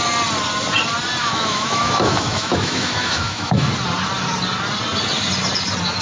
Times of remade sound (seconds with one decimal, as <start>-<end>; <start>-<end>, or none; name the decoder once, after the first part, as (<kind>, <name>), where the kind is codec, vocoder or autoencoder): 1.2-3.7 (autoencoder, DAC-VAE)